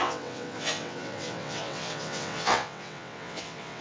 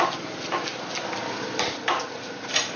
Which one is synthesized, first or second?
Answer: first